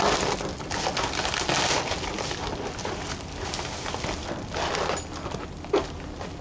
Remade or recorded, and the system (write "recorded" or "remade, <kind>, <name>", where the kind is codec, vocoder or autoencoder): recorded